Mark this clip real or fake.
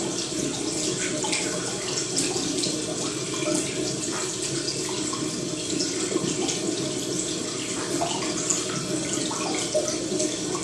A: real